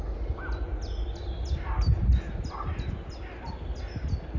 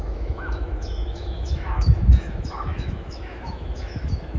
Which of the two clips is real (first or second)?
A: first